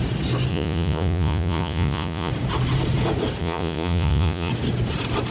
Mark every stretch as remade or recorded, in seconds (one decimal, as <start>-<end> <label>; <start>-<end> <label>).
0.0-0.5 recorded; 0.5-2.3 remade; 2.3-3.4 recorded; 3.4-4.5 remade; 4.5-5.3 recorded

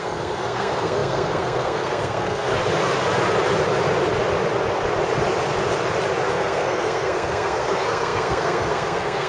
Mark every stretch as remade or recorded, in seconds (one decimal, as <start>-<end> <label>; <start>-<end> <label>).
0.0-2.5 remade; 2.5-6.3 recorded; 6.3-9.3 remade

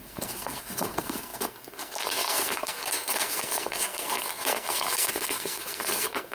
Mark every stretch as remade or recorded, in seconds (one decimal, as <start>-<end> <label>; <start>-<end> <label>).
0.0-6.3 remade

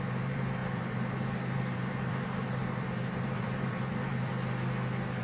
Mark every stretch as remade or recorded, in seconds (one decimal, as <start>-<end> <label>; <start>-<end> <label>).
0.0-4.3 remade; 4.3-5.2 recorded

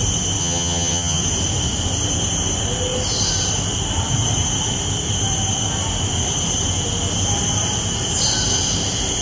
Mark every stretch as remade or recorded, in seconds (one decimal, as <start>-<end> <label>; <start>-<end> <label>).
0.0-0.4 recorded; 0.4-1.2 remade; 1.2-9.2 recorded

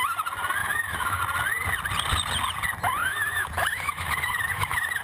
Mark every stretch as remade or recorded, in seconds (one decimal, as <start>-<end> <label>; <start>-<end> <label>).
0.0-0.6 recorded; 0.6-1.2 remade; 1.2-3.0 recorded; 3.0-5.0 remade

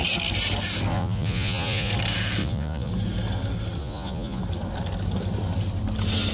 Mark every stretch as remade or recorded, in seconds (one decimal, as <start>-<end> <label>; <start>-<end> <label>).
0.0-0.9 recorded; 0.9-1.9 remade; 1.9-2.4 recorded; 2.4-2.9 remade; 2.9-3.8 recorded; 3.8-4.4 remade; 4.4-6.3 recorded